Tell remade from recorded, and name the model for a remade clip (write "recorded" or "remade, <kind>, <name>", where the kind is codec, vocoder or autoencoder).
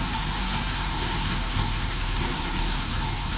remade, codec, SNAC